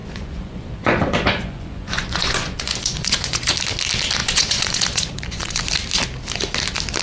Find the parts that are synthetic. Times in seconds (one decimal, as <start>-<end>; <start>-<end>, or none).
0.0-3.5; 4.2-5.6